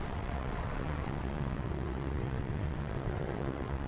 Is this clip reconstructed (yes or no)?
yes